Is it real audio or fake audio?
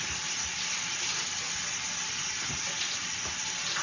real